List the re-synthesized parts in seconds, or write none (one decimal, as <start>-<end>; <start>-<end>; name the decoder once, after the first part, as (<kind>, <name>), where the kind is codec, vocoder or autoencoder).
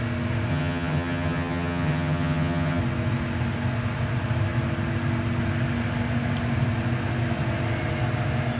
0.5-2.8 (vocoder, HiFi-GAN)